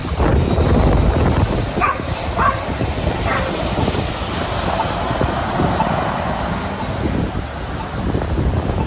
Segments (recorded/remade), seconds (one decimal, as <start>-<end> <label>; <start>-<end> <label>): 0.0-8.9 recorded